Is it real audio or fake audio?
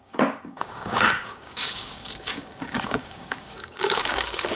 fake